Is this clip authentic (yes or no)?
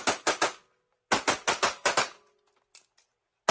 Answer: yes